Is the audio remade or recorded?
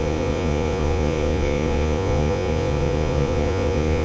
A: remade